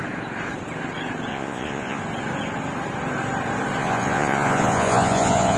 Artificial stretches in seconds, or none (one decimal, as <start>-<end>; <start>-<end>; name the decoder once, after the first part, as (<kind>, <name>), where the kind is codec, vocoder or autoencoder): 1.3-2.0 (vocoder, Vocos); 3.8-5.6